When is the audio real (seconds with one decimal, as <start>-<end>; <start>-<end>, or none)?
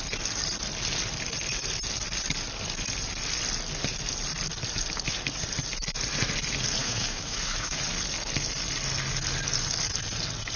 0.0-6.8; 7.8-10.6